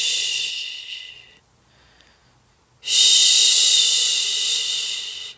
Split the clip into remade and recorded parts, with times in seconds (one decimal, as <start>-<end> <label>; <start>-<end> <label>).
0.0-0.5 recorded; 0.5-1.1 remade; 1.1-5.4 recorded